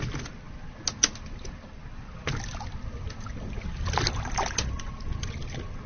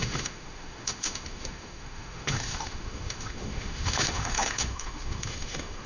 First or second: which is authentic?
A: first